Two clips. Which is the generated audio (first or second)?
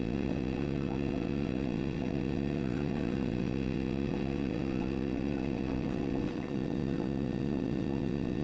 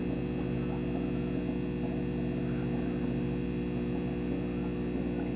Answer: first